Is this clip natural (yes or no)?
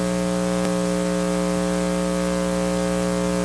yes